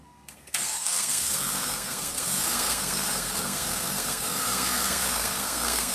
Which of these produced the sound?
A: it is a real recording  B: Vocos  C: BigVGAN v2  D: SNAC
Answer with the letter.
D